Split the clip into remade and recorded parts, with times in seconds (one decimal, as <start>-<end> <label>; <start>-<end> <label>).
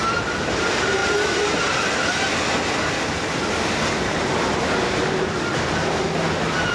0.0-6.7 recorded